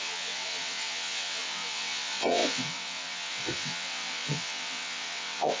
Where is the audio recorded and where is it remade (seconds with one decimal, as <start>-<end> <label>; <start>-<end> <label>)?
0.0-5.6 remade